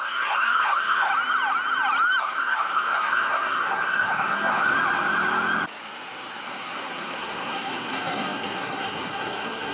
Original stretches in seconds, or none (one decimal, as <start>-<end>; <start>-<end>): 1.1-2.2; 4.7-5.8